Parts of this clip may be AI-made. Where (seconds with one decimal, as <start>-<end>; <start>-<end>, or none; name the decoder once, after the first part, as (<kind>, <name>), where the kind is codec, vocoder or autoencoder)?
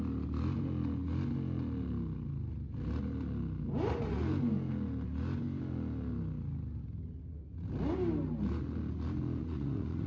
9.4-10.1 (vocoder, Vocos)